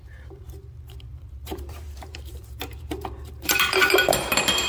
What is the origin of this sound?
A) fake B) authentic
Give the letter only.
A